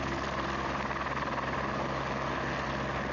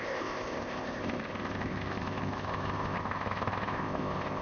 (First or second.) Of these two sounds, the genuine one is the first